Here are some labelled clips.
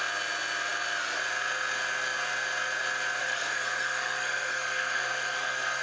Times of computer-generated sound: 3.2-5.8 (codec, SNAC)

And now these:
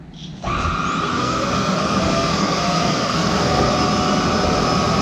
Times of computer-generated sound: 1.1-3.7 (codec, SNAC)

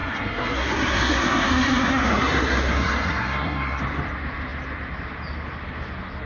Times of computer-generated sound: 0.0-3.8 (codec, SNAC)

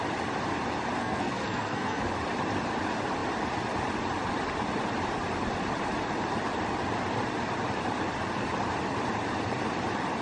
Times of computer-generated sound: 1.0-2.0 (codec, SNAC)